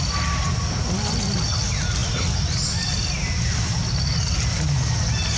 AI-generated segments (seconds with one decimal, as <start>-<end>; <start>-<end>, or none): none